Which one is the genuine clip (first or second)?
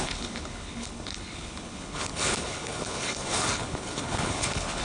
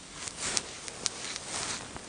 second